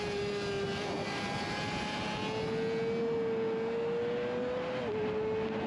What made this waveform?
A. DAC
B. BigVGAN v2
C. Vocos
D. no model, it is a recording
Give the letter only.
D